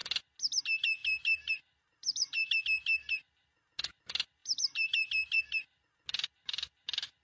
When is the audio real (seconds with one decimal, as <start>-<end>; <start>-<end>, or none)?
0.0-1.0; 2.6-4.4; 5.4-7.2